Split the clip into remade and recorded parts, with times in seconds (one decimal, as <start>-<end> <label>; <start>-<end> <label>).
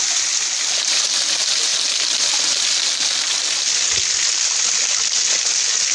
0.0-5.9 recorded